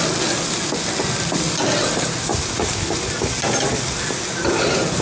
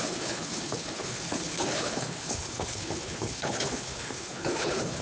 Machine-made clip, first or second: second